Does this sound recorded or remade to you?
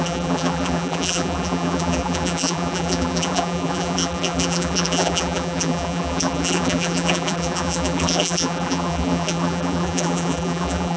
remade